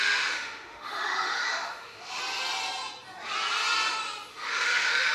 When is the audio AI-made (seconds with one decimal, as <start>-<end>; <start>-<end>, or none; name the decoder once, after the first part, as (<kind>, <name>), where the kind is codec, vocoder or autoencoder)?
0.0-2.2 (autoencoder, DAC-VAE); 4.3-5.1